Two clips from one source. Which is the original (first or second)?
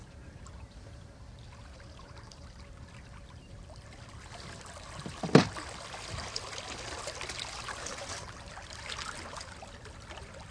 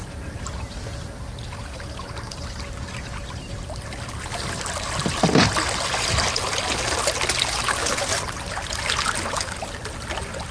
second